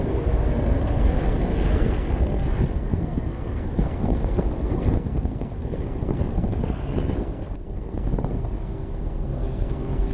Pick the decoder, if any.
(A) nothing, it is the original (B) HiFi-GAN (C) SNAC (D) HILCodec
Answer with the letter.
C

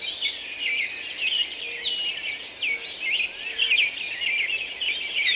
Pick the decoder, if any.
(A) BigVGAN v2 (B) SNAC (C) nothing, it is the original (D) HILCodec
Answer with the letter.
C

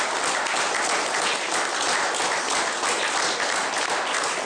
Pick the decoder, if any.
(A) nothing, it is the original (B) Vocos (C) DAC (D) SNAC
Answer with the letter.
A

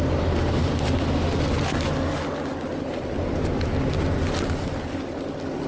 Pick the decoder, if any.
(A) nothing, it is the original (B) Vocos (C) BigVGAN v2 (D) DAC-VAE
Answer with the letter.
A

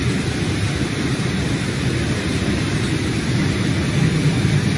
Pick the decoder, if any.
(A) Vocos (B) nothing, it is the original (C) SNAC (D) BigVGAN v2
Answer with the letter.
B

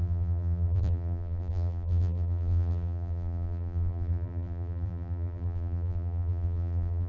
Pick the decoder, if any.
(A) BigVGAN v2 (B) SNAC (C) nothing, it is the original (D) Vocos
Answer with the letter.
A